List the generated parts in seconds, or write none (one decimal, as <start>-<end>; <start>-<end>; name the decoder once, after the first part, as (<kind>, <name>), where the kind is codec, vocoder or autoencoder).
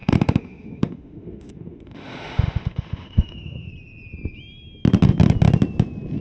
0.0-3.7 (autoencoder, DAC-VAE)